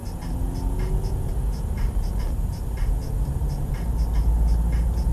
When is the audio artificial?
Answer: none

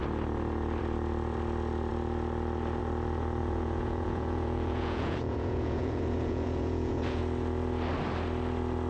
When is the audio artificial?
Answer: 3.4-7.2

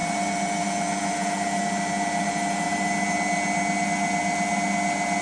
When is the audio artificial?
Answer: none

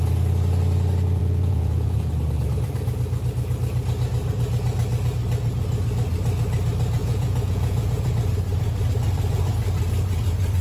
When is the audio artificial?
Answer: 1.2-2.1; 7.0-8.1